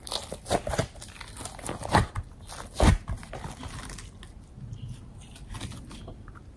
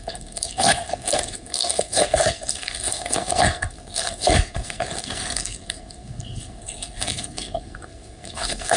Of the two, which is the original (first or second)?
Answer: first